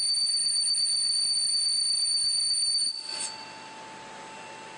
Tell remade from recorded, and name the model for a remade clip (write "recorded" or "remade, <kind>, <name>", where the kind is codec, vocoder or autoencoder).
recorded